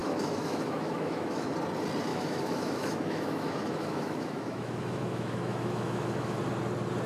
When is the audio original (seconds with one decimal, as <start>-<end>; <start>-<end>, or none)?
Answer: 1.5-2.1; 6.4-7.1